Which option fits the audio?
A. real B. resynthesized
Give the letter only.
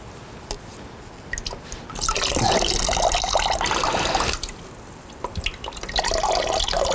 A